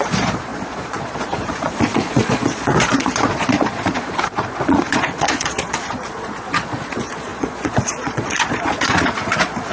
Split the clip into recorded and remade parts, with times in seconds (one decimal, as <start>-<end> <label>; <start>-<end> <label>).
0.0-9.7 remade